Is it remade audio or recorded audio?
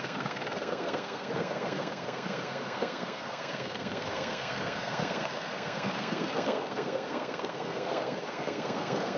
remade